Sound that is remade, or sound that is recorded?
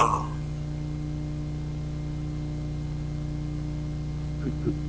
recorded